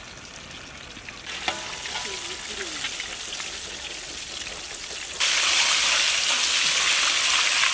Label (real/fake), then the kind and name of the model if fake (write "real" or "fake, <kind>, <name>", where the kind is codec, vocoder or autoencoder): real